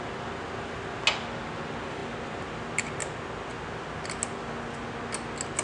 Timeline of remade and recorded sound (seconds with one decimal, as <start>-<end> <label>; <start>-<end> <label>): 0.0-5.6 recorded